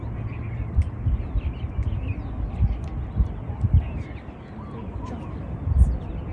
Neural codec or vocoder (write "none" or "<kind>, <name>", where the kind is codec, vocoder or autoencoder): none